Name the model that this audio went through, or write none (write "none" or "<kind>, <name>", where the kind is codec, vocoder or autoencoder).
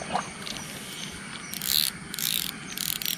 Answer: vocoder, BigVGAN v2